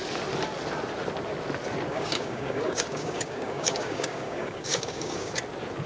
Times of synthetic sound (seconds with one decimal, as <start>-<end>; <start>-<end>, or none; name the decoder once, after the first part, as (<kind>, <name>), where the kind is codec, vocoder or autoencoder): 1.9-5.4 (codec, DAC)

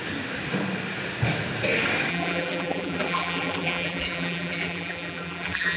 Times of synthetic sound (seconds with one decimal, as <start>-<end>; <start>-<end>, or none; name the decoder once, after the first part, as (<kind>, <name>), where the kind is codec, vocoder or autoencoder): 2.1-5.8 (vocoder, BigVGAN v2)

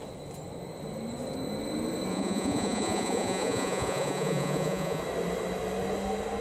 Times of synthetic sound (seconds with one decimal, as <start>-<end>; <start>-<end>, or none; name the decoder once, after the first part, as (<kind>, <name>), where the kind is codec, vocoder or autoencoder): 2.1-5.0 (vocoder, Vocos)

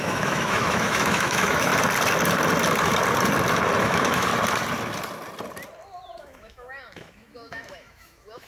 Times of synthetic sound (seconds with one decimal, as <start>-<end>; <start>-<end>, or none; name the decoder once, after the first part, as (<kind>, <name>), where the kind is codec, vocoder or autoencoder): 0.0-1.7 (autoencoder, DAC-VAE); 3.8-4.3; 6.2-8.5

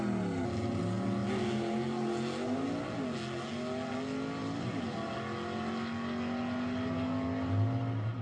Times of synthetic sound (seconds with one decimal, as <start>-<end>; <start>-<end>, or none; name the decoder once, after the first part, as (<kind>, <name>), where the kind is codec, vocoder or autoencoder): 4.4-5.1 (vocoder, BigVGAN v2)